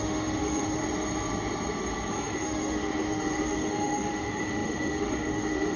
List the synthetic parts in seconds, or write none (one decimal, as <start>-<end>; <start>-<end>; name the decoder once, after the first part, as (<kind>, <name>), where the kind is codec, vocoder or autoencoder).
0.0-0.8 (autoencoder, DAC-VAE); 2.1-5.8